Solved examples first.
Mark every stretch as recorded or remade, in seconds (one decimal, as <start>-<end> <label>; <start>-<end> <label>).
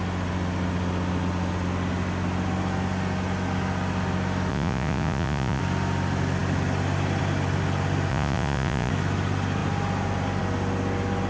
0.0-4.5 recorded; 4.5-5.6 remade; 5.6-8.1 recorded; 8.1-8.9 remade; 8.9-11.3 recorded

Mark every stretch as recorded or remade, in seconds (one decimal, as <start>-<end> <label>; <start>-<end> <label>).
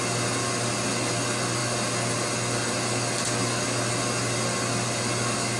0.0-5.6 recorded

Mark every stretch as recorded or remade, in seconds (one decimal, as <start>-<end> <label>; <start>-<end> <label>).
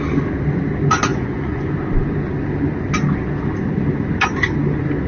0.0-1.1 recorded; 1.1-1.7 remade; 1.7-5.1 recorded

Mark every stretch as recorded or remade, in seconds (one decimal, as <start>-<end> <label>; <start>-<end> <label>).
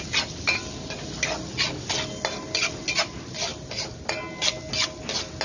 0.0-5.4 recorded